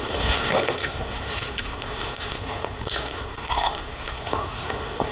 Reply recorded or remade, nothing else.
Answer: remade